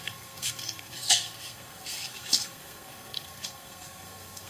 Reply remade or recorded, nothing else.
remade